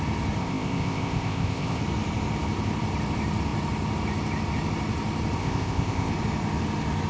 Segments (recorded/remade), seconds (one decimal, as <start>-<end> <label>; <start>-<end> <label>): 0.0-0.4 recorded; 0.4-1.8 remade; 1.8-5.4 recorded; 5.4-6.1 remade; 6.1-7.1 recorded